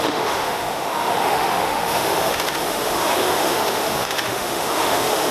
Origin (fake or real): fake